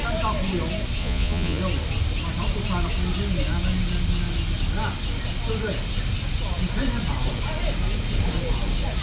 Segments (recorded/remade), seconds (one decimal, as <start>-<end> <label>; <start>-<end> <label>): 0.0-1.0 recorded; 1.0-1.6 remade; 1.6-9.0 recorded